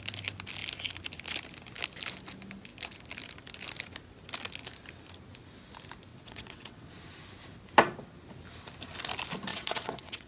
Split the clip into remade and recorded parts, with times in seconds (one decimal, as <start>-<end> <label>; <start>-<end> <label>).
0.0-6.1 recorded; 6.1-6.9 remade; 6.9-9.5 recorded; 9.5-10.3 remade